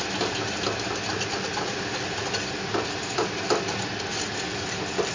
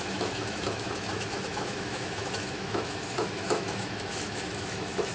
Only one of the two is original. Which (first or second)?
first